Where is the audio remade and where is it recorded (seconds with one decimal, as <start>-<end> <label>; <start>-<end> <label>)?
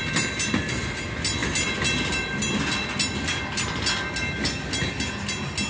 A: 0.0-5.7 recorded